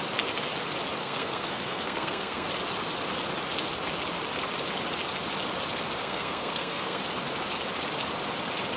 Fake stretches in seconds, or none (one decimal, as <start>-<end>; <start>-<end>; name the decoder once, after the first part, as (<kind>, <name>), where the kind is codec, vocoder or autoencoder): 1.0-2.5 (codec, SNAC); 6.0-7.0